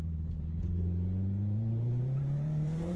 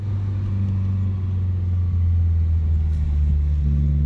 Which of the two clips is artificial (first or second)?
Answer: first